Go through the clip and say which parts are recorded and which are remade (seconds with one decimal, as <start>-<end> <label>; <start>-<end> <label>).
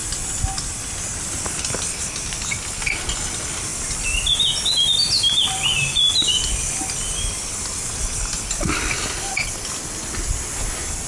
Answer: 0.0-11.1 recorded